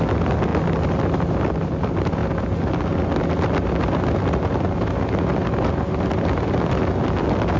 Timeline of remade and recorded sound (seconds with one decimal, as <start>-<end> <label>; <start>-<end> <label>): 0.0-7.6 recorded

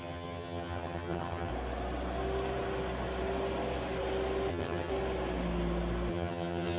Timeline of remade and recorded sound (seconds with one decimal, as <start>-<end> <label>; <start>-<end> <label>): 0.0-1.5 remade; 1.5-4.5 recorded; 4.5-4.9 remade; 4.9-6.1 recorded; 6.1-6.8 remade

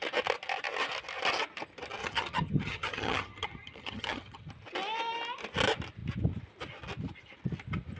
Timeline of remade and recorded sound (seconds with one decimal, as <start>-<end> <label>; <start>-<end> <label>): 0.0-2.0 recorded; 2.0-4.5 remade; 4.5-8.0 recorded

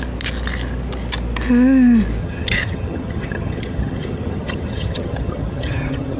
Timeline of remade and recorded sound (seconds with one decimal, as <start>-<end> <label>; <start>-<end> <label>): 0.0-2.2 recorded; 2.2-6.2 remade

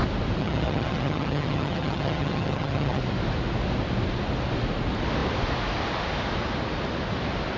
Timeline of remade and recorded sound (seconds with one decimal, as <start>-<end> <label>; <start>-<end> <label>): 0.0-0.4 recorded; 0.4-3.0 remade; 3.0-7.6 recorded

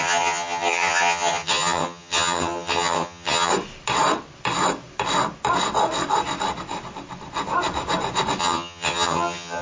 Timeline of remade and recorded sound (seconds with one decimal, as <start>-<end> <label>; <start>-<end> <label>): 0.0-3.5 remade; 3.5-8.4 recorded; 8.4-9.6 remade

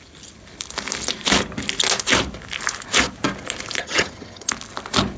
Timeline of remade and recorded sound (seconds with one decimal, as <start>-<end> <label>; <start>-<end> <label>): 0.0-3.8 recorded; 3.8-4.5 remade; 4.5-5.2 recorded

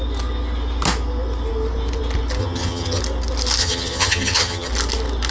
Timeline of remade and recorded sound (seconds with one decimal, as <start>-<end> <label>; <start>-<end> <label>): 0.0-2.4 recorded; 2.4-3.0 remade; 3.0-3.6 recorded; 3.6-4.7 remade; 4.7-5.3 recorded